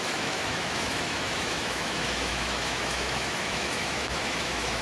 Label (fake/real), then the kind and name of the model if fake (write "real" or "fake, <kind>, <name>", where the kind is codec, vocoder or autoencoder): fake, autoencoder, DAC-VAE